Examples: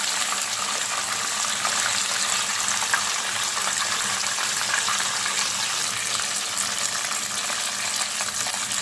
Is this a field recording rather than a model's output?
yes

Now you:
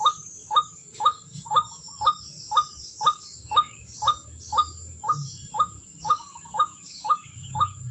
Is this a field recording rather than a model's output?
no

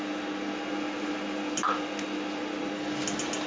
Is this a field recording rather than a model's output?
yes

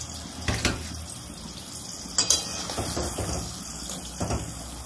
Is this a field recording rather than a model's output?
yes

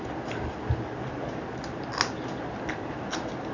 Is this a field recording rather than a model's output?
yes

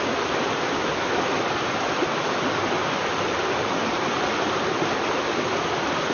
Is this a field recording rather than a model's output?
yes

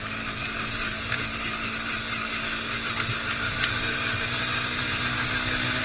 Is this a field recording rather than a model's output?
yes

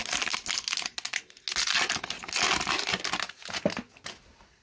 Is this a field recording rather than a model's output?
yes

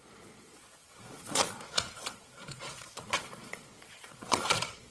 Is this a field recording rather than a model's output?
no